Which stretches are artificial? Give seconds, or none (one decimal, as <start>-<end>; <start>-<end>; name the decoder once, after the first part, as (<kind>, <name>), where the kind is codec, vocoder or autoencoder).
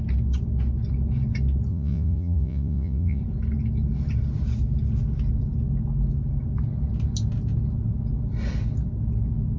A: 1.7-3.2 (vocoder, Vocos)